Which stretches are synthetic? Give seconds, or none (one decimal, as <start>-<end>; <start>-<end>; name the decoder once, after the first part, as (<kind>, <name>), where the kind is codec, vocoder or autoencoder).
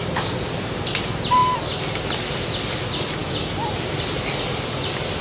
none